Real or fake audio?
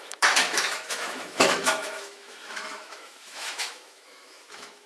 fake